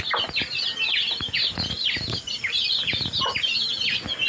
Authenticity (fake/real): real